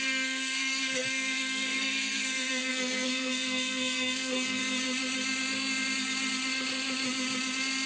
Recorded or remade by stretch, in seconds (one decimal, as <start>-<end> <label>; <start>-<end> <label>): 0.0-4.6 remade; 4.6-7.9 recorded